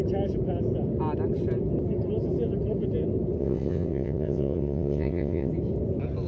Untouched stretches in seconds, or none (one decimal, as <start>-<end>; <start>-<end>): 0.0-3.4; 5.5-6.3